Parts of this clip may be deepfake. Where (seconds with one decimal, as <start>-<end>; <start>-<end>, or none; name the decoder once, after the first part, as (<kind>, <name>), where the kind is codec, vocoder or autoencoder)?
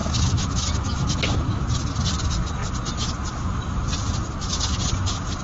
0.0-1.6 (autoencoder, DAC-VAE)